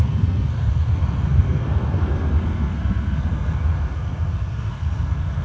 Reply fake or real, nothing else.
fake